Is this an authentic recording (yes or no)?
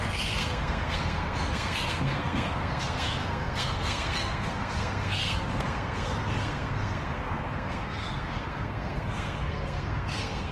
no